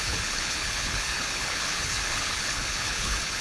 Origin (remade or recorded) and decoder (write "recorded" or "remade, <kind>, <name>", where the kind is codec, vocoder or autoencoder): remade, codec, HILCodec